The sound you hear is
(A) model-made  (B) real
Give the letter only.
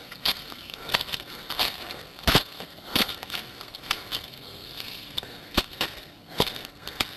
A